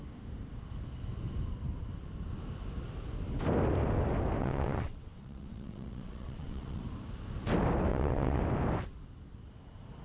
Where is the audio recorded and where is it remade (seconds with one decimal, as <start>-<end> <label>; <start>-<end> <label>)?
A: 0.0-4.4 recorded; 4.4-6.8 remade; 6.8-7.9 recorded; 7.9-8.4 remade; 8.4-10.0 recorded